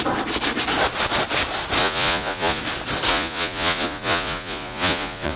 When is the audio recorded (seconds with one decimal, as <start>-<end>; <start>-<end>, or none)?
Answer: 0.0-1.8; 2.6-3.1